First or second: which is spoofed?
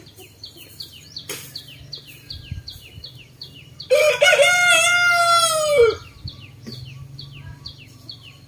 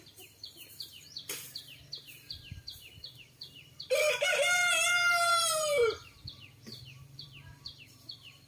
second